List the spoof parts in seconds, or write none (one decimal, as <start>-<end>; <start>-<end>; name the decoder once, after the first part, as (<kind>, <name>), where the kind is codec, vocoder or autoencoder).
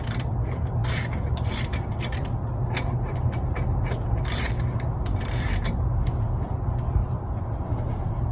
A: 2.6-6.6 (vocoder, BigVGAN v2); 7.0-7.9